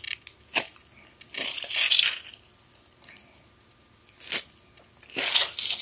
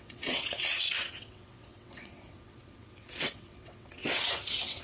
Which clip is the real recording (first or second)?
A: first